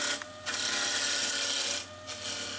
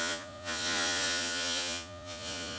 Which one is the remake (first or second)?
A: second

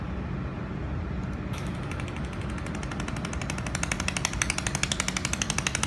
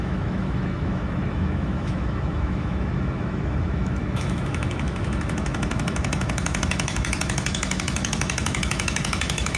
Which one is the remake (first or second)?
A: second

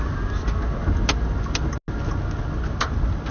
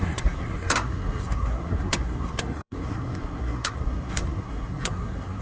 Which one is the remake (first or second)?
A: second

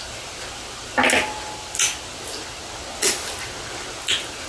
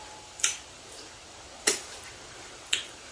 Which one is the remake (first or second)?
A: second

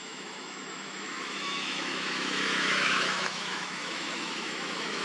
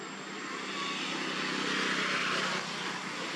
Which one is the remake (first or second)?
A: first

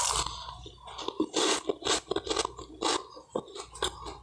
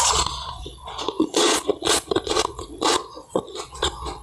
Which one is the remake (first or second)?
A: second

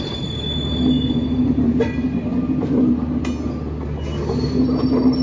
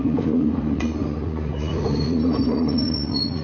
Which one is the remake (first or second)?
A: second